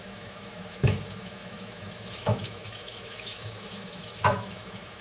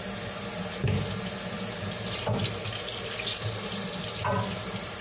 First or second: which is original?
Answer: second